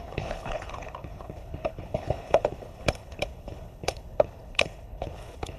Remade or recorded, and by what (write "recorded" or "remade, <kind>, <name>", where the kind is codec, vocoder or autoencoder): remade, codec, HILCodec